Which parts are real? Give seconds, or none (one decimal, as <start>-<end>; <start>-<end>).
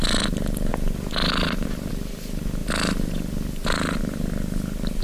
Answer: 0.0-5.0